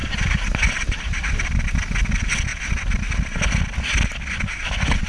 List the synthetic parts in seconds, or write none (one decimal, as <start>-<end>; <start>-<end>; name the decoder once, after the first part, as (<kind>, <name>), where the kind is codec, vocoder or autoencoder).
none